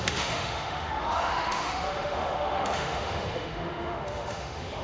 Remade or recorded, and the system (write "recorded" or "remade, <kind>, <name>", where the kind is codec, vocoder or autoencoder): remade, autoencoder, DAC-VAE